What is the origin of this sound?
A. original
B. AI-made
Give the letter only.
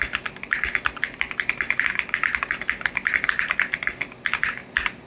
A